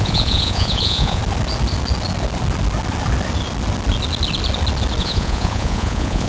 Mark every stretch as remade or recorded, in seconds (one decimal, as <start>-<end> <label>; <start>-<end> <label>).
0.0-1.2 remade; 1.2-5.0 recorded; 5.0-6.3 remade